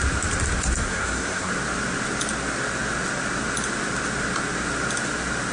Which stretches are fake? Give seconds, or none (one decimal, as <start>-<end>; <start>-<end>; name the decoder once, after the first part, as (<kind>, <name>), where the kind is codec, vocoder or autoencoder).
0.8-1.5 (codec, SNAC)